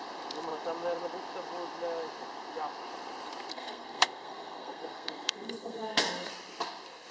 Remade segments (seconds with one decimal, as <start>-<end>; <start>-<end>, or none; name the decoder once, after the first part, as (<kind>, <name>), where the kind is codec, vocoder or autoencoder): 3.5-6.3 (codec, SNAC)